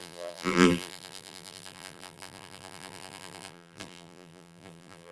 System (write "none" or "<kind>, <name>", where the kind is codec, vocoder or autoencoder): vocoder, BigVGAN v2